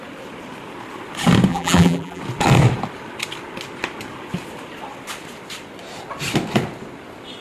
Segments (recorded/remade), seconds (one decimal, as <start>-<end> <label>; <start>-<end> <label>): 0.0-1.5 recorded; 1.5-2.2 remade; 2.2-7.4 recorded